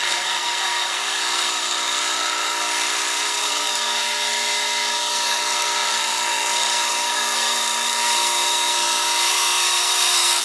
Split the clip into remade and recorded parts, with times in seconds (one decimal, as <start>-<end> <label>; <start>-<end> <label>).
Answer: 0.0-10.4 remade